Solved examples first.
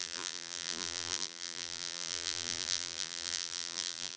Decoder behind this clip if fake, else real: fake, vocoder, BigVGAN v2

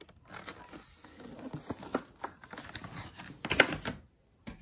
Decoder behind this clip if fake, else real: real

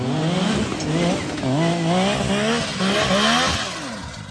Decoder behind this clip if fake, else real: real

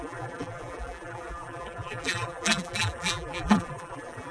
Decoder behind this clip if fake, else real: fake, vocoder, BigVGAN v2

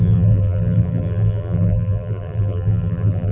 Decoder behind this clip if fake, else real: fake, vocoder, BigVGAN v2